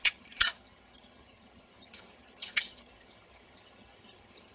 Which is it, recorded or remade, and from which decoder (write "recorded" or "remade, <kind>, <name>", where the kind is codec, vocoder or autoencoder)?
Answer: remade, vocoder, HiFi-GAN